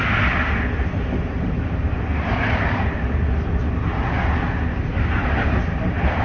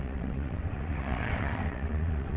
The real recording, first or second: first